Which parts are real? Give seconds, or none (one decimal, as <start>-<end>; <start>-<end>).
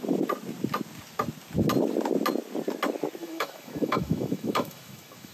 0.0-3.2